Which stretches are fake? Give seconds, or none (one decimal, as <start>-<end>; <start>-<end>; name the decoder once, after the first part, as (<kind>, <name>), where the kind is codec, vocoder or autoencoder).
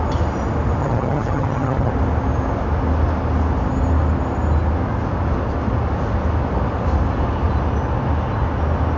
0.8-1.9 (vocoder, HiFi-GAN)